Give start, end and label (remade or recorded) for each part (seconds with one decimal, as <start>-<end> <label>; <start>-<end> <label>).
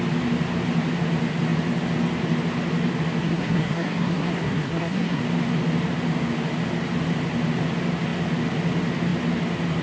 0.0-3.2 recorded; 3.2-5.2 remade; 5.2-9.8 recorded